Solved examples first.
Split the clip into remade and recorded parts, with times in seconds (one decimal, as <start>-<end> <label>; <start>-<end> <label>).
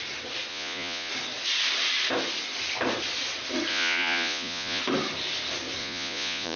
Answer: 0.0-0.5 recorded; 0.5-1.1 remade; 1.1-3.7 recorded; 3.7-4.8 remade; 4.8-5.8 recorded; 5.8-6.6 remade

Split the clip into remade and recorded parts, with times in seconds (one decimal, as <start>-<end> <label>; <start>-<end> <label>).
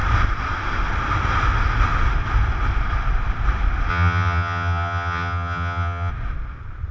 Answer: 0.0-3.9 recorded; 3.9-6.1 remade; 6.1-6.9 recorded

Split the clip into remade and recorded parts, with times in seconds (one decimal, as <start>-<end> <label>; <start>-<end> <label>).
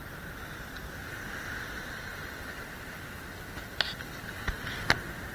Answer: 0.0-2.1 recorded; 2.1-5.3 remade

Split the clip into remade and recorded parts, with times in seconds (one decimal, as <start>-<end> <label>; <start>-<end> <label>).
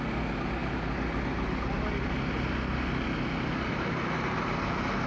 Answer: 0.0-5.1 recorded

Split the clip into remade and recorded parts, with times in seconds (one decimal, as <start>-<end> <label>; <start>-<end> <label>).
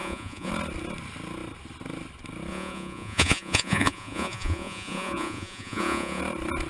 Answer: 0.0-0.5 remade; 0.5-2.5 recorded; 2.5-6.2 remade; 6.2-6.7 recorded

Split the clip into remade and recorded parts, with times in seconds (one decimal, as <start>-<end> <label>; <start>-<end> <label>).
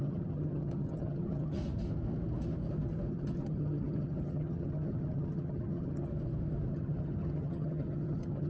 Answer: 0.0-1.6 remade; 1.6-3.1 recorded; 3.1-6.1 remade; 6.1-6.7 recorded; 6.7-8.5 remade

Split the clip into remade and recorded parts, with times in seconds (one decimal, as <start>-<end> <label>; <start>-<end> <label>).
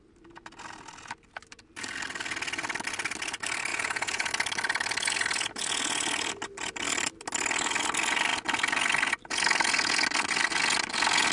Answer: 0.0-3.7 recorded; 3.7-4.3 remade; 4.3-11.3 recorded